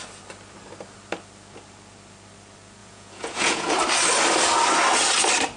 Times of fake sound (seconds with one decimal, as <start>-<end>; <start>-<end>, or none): 2.8-3.7